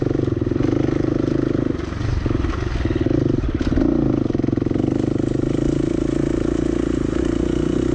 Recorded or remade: recorded